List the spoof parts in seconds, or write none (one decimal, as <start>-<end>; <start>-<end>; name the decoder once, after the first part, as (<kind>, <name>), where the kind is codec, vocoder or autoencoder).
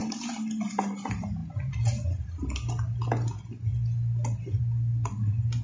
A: none